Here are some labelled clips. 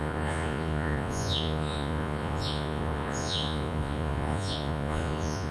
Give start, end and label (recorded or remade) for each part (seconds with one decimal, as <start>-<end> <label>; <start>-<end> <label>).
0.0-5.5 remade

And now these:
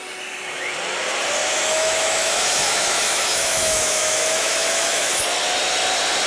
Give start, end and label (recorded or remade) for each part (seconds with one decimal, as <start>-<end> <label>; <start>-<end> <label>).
0.0-1.4 recorded; 1.4-5.2 remade; 5.2-6.3 recorded

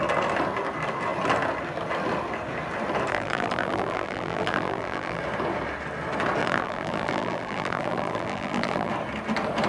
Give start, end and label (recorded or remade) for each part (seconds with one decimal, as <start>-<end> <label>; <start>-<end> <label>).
0.0-3.1 recorded; 3.1-5.2 remade; 5.2-6.4 recorded; 6.4-8.9 remade; 8.9-9.7 recorded

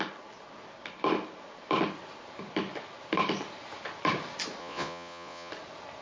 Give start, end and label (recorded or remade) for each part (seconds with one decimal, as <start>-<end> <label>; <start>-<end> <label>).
0.0-4.6 recorded; 4.6-5.5 remade; 5.5-6.0 recorded

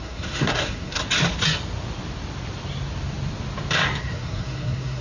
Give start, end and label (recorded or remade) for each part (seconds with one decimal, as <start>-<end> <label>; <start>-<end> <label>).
0.0-1.0 remade; 1.0-4.0 recorded; 4.0-5.0 remade

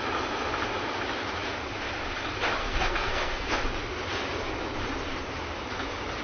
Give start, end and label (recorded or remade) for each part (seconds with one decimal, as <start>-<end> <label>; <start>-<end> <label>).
0.0-2.6 recorded; 2.6-3.5 remade; 3.5-6.2 recorded